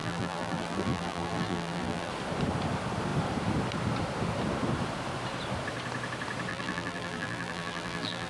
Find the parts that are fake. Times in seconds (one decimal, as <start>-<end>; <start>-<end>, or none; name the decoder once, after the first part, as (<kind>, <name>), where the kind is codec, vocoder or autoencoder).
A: 0.0-2.1 (vocoder, BigVGAN v2); 6.5-8.3